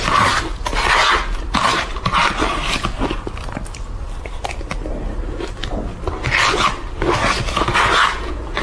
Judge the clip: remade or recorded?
recorded